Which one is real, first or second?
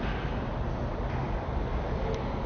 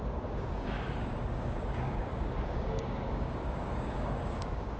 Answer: first